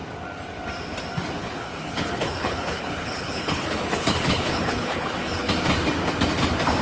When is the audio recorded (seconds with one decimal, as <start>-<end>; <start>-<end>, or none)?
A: 0.0-1.4; 5.5-6.8